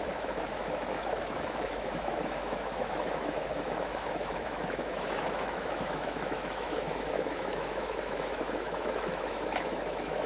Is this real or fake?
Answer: fake